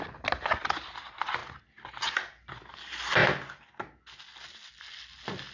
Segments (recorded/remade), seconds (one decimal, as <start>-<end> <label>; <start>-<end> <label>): 0.0-5.5 recorded